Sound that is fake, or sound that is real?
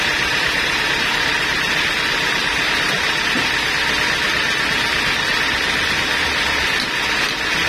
real